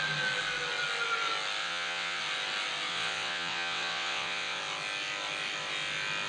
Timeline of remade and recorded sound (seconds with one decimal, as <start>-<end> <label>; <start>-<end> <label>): 0.0-1.6 recorded; 1.6-2.2 remade; 2.2-2.9 recorded; 2.9-4.6 remade; 4.6-6.3 recorded